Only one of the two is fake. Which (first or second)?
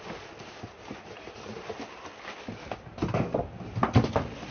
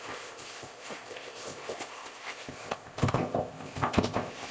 second